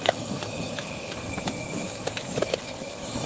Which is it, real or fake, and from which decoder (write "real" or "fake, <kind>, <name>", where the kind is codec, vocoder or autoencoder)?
fake, autoencoder, DAC-VAE